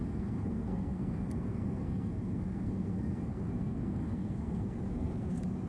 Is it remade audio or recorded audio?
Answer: remade